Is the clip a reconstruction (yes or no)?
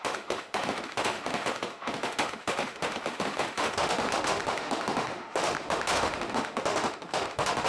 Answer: yes